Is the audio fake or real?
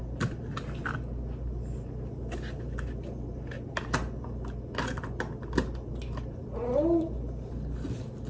real